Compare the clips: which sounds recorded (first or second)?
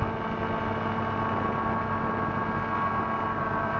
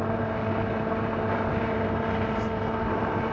first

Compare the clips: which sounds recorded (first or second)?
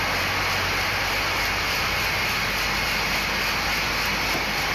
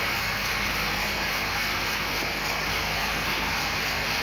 first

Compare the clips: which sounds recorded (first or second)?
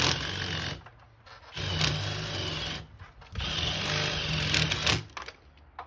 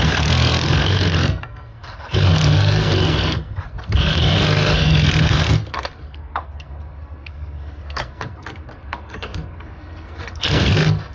first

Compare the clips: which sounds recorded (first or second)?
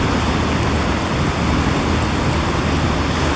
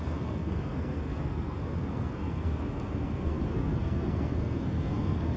first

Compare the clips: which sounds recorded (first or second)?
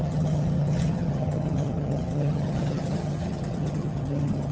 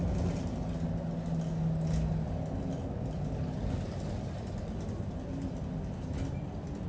second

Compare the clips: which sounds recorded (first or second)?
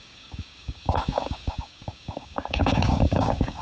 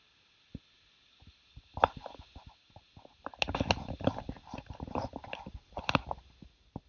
second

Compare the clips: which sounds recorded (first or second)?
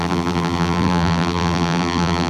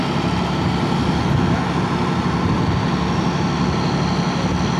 second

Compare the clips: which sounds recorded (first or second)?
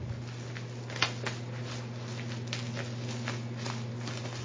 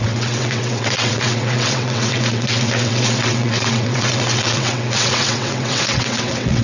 first